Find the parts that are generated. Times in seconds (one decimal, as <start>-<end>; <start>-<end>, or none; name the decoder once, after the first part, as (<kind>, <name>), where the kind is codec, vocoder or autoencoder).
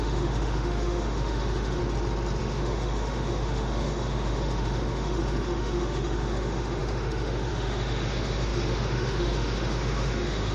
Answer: 0.0-1.8 (autoencoder, DAC-VAE); 2.4-10.5